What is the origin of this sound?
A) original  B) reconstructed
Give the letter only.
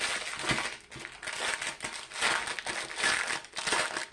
A